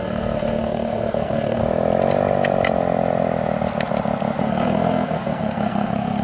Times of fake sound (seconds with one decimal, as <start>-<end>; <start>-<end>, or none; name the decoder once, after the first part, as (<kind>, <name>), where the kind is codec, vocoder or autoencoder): 0.0-1.6 (codec, SNAC); 4.4-6.2